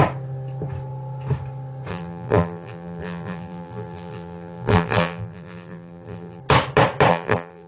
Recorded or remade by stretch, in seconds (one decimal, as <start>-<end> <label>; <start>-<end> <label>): 0.0-1.9 recorded; 1.9-6.4 remade; 6.4-7.1 recorded; 7.1-7.7 remade